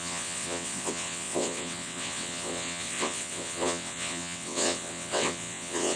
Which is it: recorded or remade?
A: remade